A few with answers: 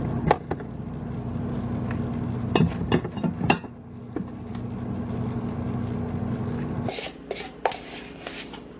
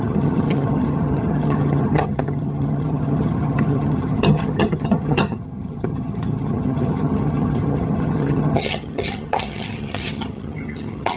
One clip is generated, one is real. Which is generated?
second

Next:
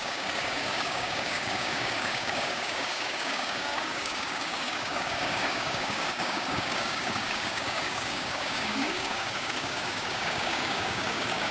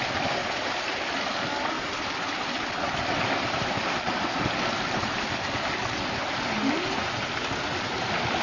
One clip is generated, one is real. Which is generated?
first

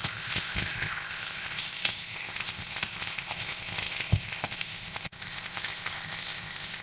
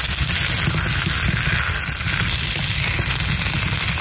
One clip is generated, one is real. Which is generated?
first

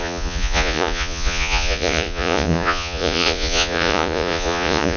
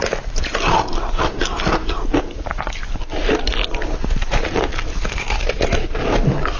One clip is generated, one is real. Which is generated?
first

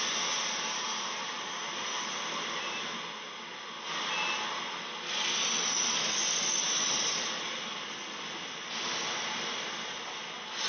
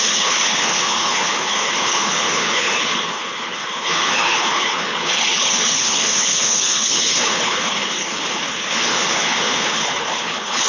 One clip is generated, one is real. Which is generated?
second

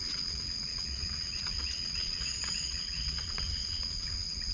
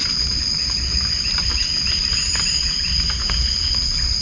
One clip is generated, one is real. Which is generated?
first